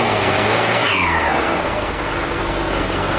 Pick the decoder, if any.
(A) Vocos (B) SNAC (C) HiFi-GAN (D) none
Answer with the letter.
B